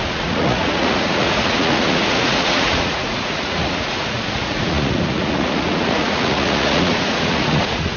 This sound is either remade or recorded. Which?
remade